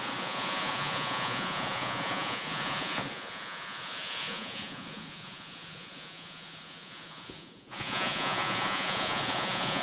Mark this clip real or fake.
fake